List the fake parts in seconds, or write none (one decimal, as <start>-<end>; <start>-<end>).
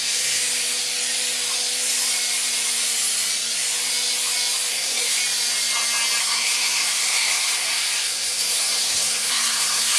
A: 0.0-0.4; 4.7-5.2; 6.2-10.0